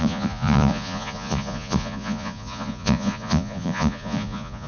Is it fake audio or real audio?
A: fake